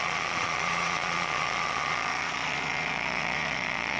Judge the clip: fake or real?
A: fake